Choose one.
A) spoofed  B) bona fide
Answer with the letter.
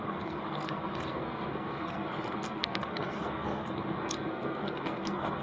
A